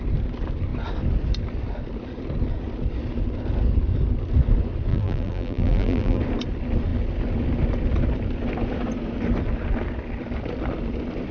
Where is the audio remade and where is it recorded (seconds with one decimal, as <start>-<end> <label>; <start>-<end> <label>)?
0.0-4.9 recorded; 4.9-6.2 remade; 6.2-11.3 recorded